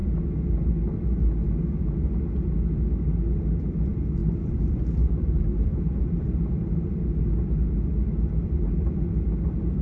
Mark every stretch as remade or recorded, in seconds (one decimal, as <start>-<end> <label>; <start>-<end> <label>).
0.0-3.6 recorded; 3.6-7.0 remade; 7.0-8.3 recorded; 8.3-9.8 remade